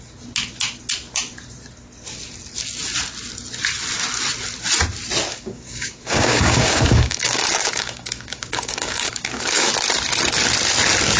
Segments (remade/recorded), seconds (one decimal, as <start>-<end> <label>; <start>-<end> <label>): 0.0-5.3 recorded; 5.3-9.7 remade; 9.7-11.2 recorded